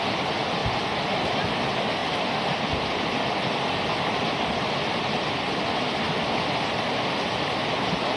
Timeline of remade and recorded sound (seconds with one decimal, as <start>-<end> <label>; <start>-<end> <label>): 0.0-8.2 recorded